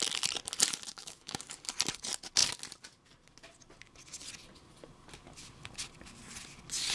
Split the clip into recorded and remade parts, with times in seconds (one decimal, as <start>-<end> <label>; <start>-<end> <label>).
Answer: 0.0-0.9 recorded; 0.9-1.4 remade; 1.4-6.9 recorded